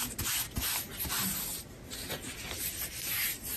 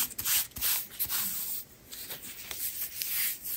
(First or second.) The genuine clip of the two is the first